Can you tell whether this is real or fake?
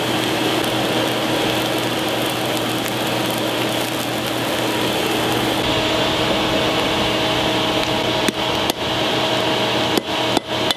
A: real